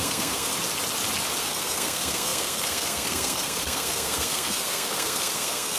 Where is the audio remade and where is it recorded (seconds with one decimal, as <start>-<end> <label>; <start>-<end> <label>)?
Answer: 0.0-0.5 remade; 0.5-1.4 recorded; 1.4-5.8 remade